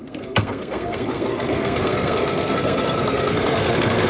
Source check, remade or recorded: remade